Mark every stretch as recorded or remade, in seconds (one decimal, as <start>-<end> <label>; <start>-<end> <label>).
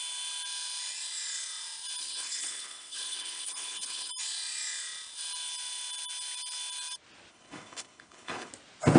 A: 0.0-2.0 recorded; 2.0-4.1 remade; 4.1-7.3 recorded; 7.3-8.5 remade; 8.5-9.0 recorded